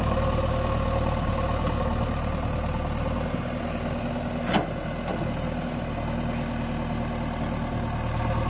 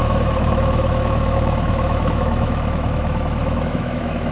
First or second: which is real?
first